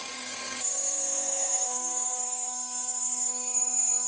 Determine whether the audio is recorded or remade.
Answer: remade